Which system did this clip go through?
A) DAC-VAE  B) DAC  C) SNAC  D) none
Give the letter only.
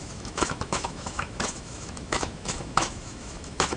A